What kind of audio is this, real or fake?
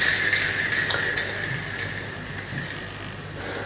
real